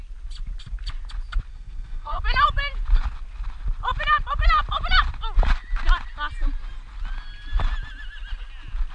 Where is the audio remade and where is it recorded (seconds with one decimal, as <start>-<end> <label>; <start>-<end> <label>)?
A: 0.0-1.5 recorded; 1.5-2.2 remade; 2.2-8.9 recorded